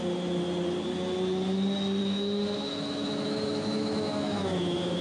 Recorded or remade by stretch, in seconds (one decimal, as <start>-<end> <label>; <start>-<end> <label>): 0.0-2.0 recorded; 2.0-5.0 remade